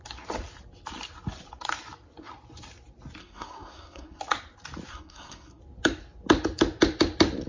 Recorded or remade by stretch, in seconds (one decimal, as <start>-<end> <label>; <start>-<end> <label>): 0.0-3.2 recorded; 3.2-4.2 remade; 4.2-4.9 recorded; 4.9-5.6 remade; 5.6-7.5 recorded